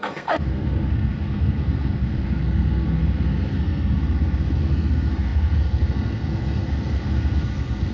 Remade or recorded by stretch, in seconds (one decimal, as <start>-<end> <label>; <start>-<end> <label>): 0.0-7.9 remade